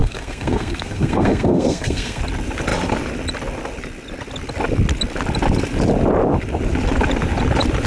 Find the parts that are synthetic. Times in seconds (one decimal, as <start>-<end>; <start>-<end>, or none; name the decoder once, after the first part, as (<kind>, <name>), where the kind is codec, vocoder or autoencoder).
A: 0.0-2.2 (codec, SNAC)

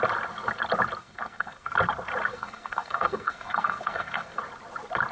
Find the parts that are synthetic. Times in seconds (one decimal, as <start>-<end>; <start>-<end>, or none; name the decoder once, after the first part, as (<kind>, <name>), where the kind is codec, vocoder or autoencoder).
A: 1.0-1.7 (codec, SNAC); 2.3-4.4